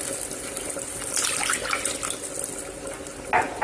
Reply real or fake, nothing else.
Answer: real